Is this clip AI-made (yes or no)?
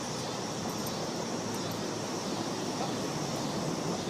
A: no